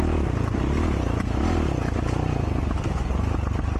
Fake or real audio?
real